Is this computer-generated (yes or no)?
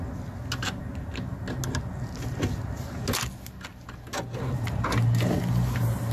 no